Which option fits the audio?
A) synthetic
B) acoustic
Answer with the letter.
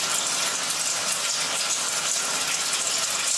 B